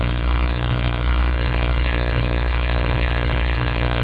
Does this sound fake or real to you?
fake